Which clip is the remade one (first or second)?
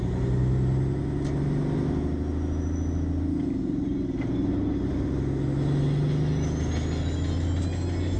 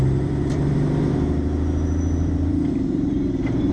second